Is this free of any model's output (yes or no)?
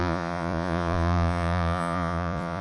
no